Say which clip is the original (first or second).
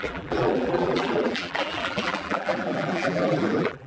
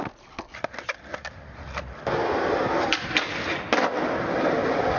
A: second